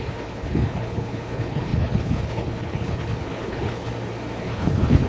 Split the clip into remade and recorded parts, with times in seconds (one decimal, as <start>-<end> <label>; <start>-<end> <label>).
0.0-3.9 remade; 3.9-4.4 recorded; 4.4-5.1 remade